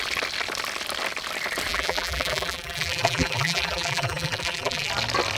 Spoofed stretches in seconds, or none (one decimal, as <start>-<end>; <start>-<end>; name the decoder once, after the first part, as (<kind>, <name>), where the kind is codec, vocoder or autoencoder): 1.7-4.9 (vocoder, BigVGAN v2)

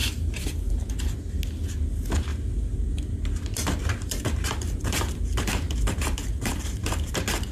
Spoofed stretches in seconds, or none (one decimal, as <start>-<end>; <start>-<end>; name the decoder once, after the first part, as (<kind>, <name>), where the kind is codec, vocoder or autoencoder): 0.0-0.9 (vocoder, BigVGAN v2); 2.3-3.0; 3.8-7.1

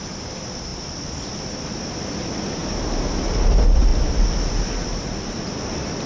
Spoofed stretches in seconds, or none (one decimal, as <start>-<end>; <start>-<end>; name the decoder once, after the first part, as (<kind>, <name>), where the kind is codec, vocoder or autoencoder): 2.6-3.1 (vocoder, BigVGAN v2)

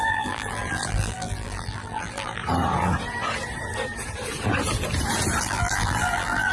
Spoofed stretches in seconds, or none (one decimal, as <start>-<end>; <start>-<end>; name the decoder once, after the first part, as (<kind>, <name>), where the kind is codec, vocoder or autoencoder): 0.0-2.4 (vocoder, BigVGAN v2); 5.4-6.5

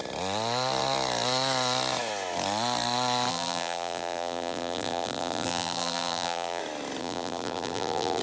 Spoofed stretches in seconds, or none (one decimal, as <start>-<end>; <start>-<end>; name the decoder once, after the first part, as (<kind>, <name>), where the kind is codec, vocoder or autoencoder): 3.3-6.6 (vocoder, BigVGAN v2); 7.0-8.2

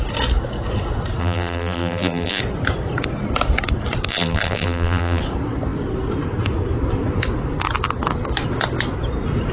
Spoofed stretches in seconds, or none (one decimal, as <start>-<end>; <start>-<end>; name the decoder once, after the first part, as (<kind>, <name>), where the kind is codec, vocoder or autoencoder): 1.2-2.4 (vocoder, BigVGAN v2); 4.1-5.2